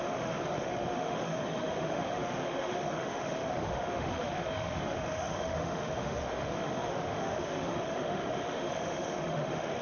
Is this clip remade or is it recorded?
remade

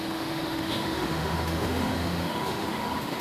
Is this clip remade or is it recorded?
remade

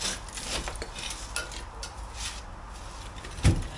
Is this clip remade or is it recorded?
recorded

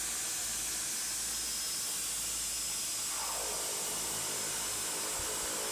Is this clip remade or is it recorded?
recorded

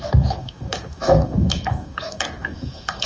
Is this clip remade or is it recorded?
remade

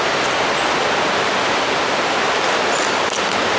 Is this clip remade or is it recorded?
recorded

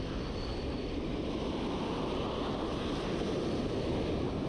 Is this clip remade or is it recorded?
recorded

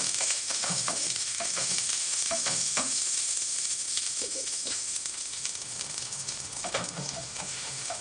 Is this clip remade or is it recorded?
remade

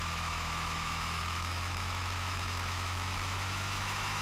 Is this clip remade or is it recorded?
remade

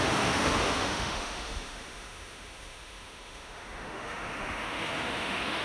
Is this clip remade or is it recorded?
remade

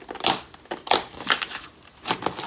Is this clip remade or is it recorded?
recorded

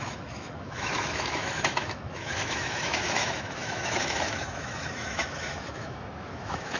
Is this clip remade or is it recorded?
remade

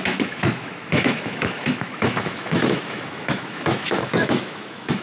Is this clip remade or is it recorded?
remade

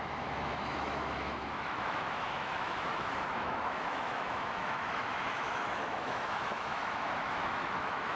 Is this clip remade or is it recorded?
remade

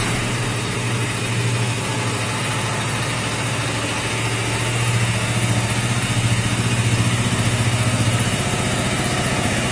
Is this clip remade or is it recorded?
recorded